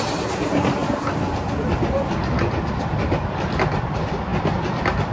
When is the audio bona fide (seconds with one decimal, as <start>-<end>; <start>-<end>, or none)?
0.0-5.1